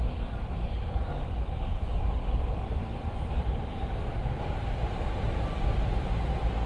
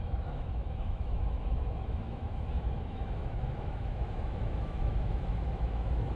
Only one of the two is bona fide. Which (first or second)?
first